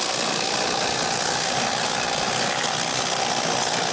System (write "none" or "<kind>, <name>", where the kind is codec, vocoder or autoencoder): none